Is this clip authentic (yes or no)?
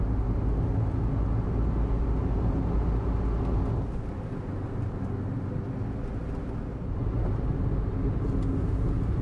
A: yes